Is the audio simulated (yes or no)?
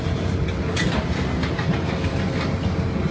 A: no